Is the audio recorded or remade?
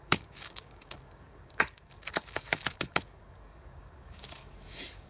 remade